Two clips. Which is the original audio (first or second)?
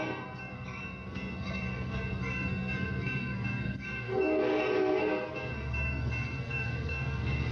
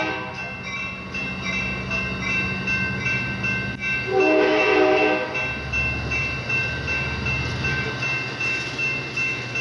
second